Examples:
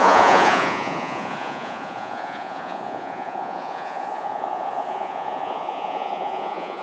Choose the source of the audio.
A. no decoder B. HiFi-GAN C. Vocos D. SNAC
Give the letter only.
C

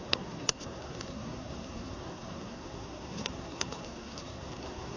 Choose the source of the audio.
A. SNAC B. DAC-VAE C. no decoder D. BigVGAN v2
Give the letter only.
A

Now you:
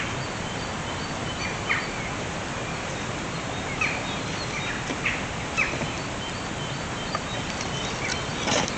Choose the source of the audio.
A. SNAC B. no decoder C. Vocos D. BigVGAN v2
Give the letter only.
B